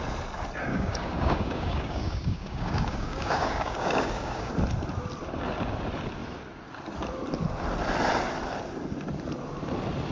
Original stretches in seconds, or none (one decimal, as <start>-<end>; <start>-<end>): 0.0-0.7; 4.5-10.1